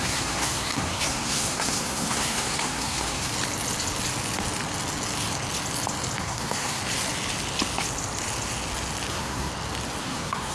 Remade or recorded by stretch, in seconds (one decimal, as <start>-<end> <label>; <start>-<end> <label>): 0.0-3.3 remade; 3.3-6.2 recorded; 6.2-6.8 remade; 6.8-9.1 recorded; 9.1-9.5 remade; 9.5-10.0 recorded; 10.0-10.5 remade